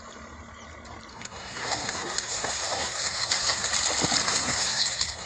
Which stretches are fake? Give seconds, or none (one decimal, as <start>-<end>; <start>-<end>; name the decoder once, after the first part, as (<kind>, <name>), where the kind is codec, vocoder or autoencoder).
1.1-3.7 (codec, SNAC); 4.2-5.3